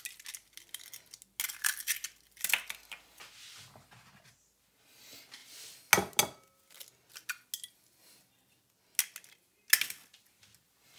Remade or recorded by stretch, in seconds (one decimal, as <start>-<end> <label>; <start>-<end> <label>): 0.0-11.0 recorded